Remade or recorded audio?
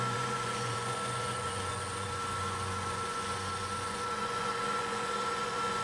remade